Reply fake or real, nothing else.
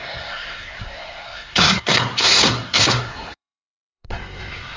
fake